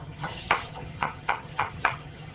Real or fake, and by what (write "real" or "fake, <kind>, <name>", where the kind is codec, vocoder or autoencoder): fake, vocoder, HiFi-GAN